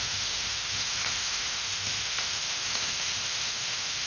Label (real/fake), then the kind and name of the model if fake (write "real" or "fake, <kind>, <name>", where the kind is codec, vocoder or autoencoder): fake, autoencoder, DAC-VAE